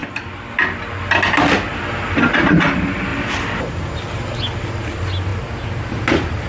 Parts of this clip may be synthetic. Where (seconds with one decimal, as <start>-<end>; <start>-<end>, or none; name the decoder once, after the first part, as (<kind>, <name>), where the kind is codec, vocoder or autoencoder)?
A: 3.1-3.6 (vocoder, BigVGAN v2)